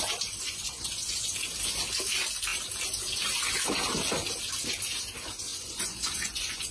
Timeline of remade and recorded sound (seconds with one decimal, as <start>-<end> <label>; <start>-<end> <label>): 0.0-0.4 recorded; 0.4-1.3 remade; 1.3-5.5 recorded; 5.5-6.7 remade